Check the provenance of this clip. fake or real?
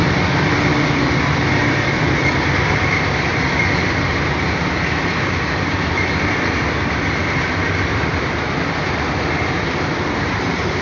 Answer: fake